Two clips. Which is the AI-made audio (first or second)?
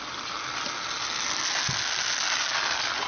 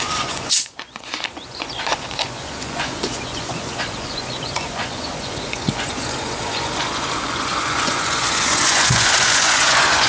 second